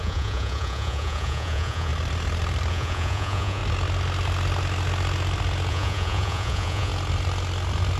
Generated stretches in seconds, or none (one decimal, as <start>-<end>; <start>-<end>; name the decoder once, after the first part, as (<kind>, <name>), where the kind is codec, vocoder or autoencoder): 0.0-1.9 (vocoder, Vocos); 2.7-3.6; 5.7-6.9